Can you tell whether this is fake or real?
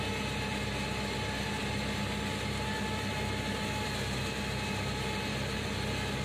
real